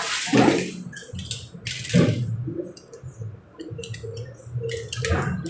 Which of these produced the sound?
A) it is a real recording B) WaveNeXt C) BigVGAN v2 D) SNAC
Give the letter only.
A